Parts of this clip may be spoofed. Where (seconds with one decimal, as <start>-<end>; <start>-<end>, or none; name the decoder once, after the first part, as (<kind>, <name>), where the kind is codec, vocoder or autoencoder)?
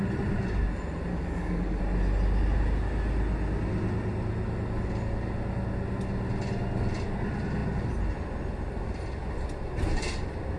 1.1-1.8 (codec, DAC)